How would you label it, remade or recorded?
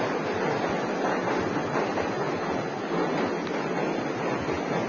recorded